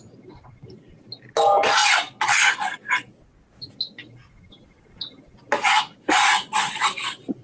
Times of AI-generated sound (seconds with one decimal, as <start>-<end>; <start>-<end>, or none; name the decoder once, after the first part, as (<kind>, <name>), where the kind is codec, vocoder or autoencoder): none